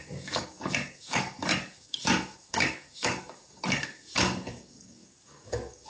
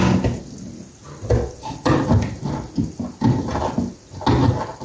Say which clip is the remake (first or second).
first